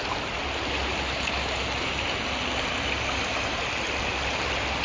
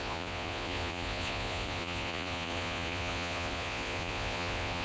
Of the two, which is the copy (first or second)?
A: second